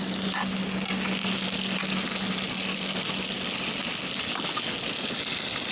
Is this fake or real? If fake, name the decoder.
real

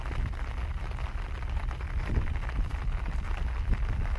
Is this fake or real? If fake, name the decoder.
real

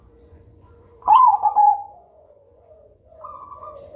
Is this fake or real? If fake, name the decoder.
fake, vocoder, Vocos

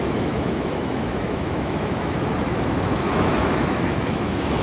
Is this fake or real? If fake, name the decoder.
fake, autoencoder, DAC-VAE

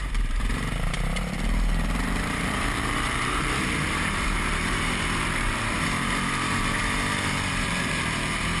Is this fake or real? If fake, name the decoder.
fake, vocoder, BigVGAN v2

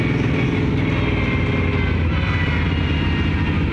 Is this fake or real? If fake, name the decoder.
real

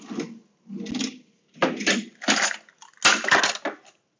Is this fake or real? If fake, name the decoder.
real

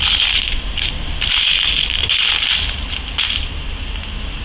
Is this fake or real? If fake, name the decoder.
real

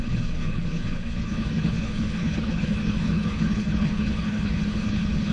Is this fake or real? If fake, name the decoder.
fake, codec, HILCodec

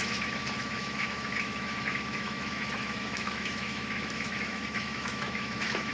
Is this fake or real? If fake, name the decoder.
fake, autoencoder, DAC-VAE